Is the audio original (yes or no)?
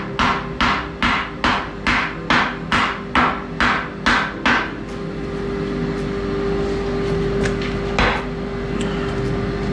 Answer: yes